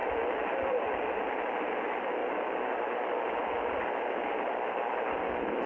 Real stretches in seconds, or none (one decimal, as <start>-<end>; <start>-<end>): 1.2-2.2; 2.9-5.7